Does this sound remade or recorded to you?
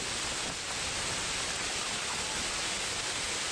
recorded